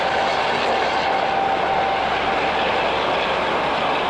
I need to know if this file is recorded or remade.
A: recorded